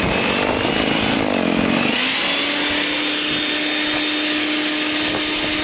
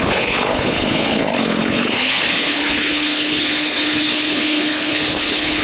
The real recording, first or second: first